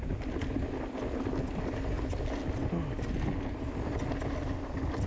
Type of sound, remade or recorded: recorded